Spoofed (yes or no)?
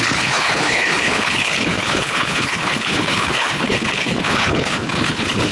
yes